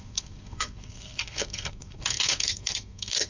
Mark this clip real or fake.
fake